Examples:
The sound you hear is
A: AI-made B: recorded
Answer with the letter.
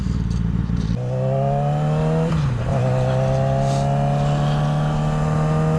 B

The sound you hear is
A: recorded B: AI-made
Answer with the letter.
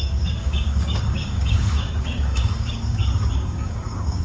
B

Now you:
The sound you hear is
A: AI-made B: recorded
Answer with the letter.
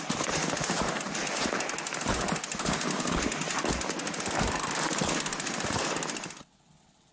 B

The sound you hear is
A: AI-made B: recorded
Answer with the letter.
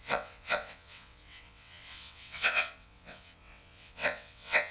A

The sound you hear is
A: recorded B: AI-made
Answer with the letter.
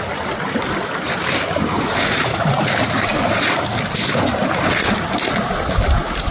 B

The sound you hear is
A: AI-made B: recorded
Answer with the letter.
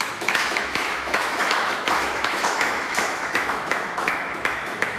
A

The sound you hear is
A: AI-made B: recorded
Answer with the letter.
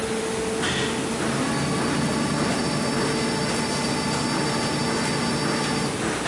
B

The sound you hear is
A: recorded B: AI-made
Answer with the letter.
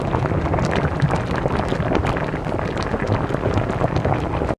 A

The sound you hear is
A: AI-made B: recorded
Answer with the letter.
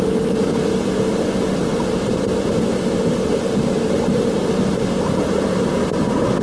A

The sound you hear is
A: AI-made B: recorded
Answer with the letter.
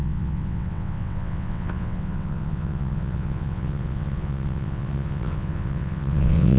A